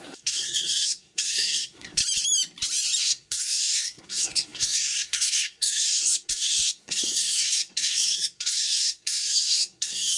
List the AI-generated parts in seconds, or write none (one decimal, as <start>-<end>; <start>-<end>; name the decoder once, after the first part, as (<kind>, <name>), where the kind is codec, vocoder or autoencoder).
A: 0.0-2.0 (codec, SNAC); 3.0-10.2